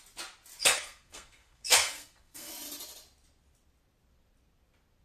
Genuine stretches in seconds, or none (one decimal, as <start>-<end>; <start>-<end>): 0.0-0.6; 2.5-5.0

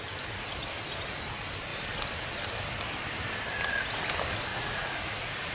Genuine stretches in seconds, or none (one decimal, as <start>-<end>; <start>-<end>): 0.0-4.5

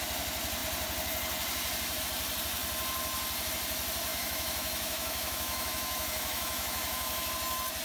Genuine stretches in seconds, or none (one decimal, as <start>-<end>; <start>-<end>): 0.0-4.1; 7.3-7.8

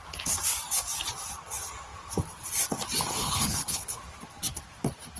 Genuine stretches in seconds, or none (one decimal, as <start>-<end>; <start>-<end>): 0.0-3.1; 4.0-5.2

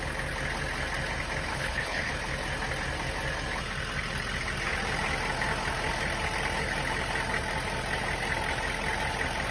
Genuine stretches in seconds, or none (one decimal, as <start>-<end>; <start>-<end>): 0.0-1.5; 2.1-9.5

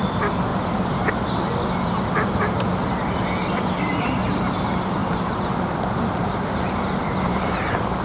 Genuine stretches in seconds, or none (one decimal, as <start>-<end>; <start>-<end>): 0.0-0.5; 2.0-2.7; 3.4-5.0

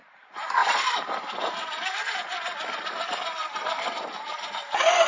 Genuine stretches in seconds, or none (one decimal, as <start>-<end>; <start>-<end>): 0.0-5.1

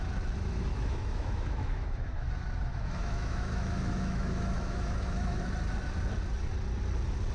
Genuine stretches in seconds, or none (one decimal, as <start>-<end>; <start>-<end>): 0.0-0.7; 2.3-2.7; 5.4-7.3